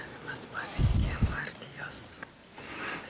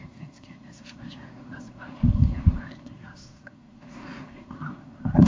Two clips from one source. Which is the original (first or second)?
first